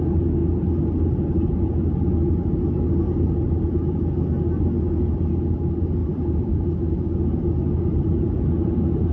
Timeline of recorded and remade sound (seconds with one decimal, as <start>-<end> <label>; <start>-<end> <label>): 0.0-6.0 recorded; 6.0-6.9 remade; 6.9-9.1 recorded